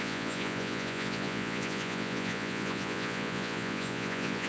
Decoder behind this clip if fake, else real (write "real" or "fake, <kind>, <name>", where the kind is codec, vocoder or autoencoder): fake, vocoder, Vocos